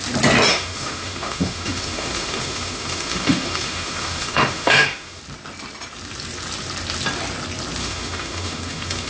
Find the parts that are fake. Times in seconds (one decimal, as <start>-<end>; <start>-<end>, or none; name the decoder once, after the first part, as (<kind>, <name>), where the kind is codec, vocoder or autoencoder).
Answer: 0.5-5.2 (autoencoder, DAC-VAE); 7.8-9.1